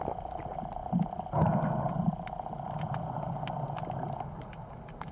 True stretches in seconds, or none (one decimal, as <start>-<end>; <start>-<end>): 0.0-5.1